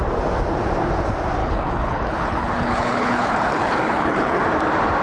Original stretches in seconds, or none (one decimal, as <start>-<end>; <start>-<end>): 0.0-1.4; 4.4-5.0

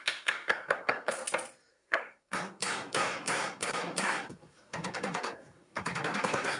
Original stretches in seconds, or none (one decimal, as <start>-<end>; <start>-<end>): 1.2-1.7

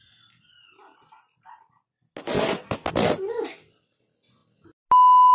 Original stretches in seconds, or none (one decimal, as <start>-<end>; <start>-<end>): 0.0-5.3

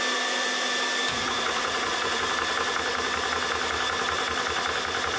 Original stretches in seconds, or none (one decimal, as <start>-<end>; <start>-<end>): 0.0-1.1; 2.2-5.2

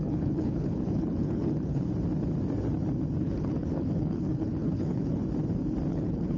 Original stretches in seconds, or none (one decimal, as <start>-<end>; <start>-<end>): 1.9-3.2; 5.2-5.9